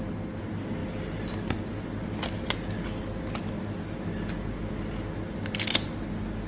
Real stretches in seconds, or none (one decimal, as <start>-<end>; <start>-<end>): 0.0-6.5